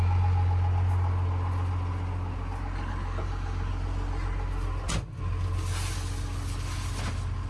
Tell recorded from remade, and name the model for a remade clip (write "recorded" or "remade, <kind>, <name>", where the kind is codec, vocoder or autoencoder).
recorded